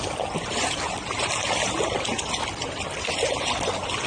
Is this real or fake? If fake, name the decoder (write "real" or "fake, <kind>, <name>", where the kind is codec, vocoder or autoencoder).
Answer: real